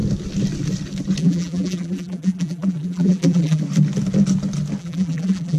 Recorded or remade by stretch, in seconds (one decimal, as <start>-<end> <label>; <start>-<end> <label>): 0.0-1.2 recorded; 1.2-3.6 remade; 3.6-4.8 recorded; 4.8-5.6 remade

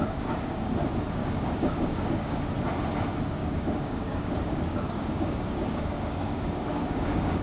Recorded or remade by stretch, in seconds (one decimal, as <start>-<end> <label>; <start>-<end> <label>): 0.0-0.7 remade; 0.7-1.2 recorded; 1.2-2.4 remade; 2.4-3.4 recorded; 3.4-7.4 remade